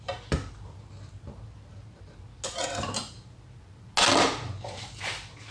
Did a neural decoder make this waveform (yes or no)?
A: no